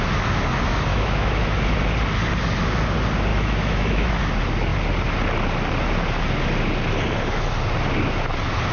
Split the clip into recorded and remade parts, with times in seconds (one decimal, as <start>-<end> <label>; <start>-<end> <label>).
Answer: 0.0-0.9 recorded; 0.9-1.6 remade; 1.6-3.3 recorded; 3.3-4.1 remade; 4.1-8.7 recorded